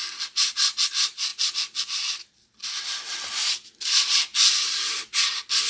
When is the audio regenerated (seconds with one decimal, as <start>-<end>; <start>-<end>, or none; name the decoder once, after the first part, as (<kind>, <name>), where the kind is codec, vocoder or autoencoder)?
1.3-3.3 (vocoder, BigVGAN v2); 4.0-4.8